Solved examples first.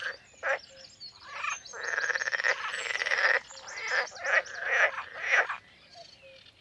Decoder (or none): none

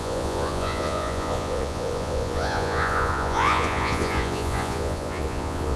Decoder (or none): vocoder, Vocos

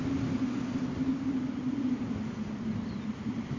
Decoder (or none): none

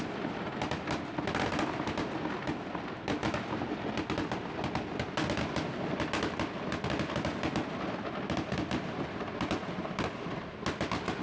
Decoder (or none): none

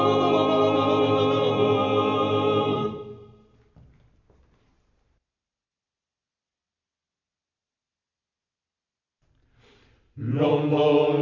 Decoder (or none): none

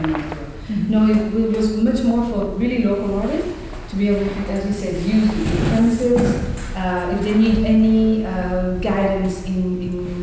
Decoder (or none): none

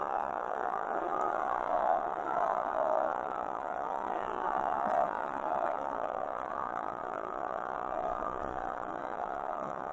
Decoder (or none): vocoder, Vocos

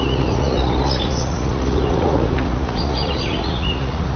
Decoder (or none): vocoder, Vocos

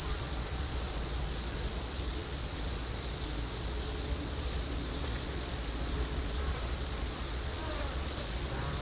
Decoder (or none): vocoder, Vocos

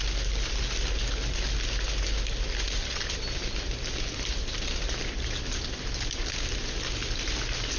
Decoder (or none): none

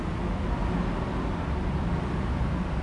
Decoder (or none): none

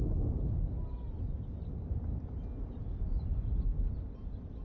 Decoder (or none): none